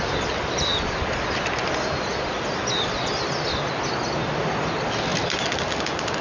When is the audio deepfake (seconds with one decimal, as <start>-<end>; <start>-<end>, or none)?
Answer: none